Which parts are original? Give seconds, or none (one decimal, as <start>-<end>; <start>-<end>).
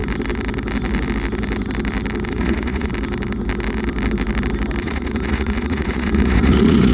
0.0-2.3; 2.9-4.8